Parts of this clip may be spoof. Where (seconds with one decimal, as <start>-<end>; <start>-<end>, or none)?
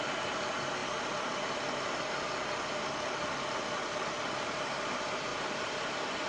5.3-6.3